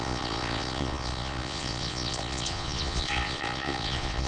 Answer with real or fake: fake